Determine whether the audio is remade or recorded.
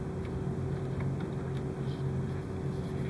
recorded